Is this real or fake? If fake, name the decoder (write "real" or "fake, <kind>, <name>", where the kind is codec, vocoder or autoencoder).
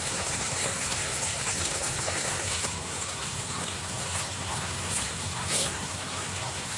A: fake, codec, SNAC